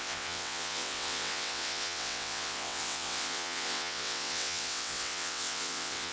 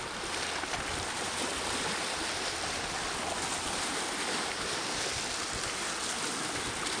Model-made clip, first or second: first